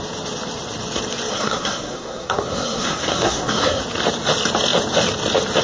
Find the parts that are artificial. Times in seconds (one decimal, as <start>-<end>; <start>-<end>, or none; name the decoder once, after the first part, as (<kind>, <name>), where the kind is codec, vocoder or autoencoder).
1.3-3.8 (codec, SNAC)